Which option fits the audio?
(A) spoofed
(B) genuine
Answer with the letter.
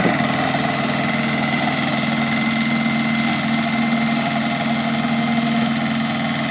B